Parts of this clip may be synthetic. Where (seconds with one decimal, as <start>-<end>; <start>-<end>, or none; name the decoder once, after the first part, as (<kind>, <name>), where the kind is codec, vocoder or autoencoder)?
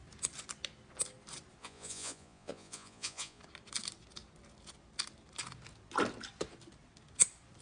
1.6-3.4 (vocoder, Vocos)